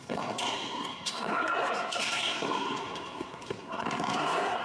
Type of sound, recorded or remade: remade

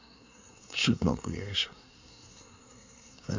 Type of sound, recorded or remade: remade